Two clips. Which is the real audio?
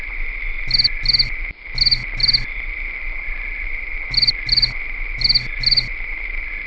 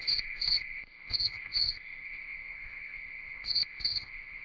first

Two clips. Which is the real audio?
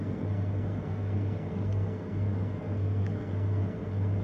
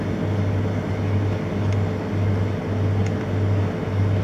second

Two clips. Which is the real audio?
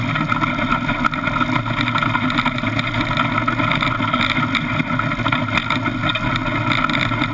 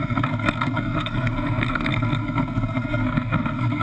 first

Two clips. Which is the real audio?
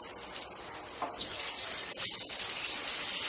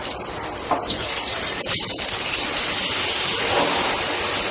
first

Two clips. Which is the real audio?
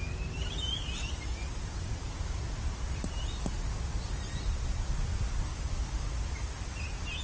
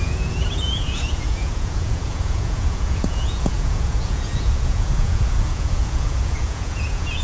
first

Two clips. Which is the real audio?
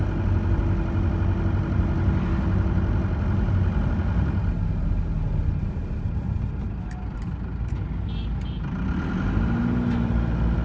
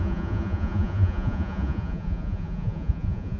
first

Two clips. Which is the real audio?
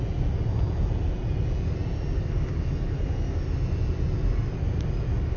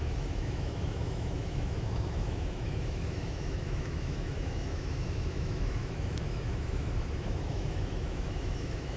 first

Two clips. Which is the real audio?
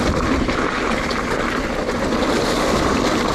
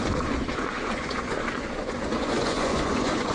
first